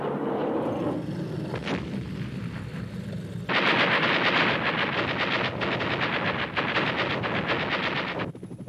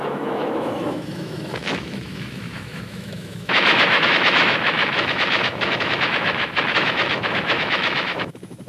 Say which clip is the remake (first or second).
second